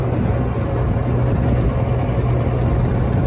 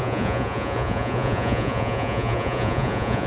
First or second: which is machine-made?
second